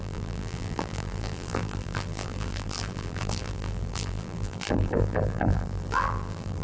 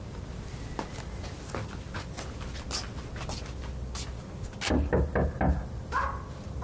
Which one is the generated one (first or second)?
first